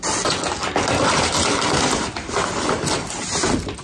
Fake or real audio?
real